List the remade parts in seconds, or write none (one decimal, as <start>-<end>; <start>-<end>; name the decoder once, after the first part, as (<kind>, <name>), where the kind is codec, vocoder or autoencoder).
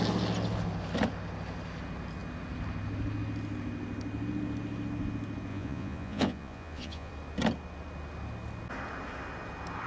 5.5-7.1 (vocoder, Vocos)